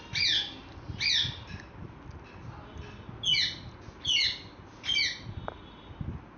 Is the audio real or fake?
real